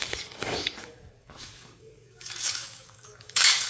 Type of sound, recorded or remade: remade